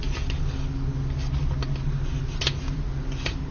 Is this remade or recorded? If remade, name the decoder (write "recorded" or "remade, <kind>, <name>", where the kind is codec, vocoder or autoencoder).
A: recorded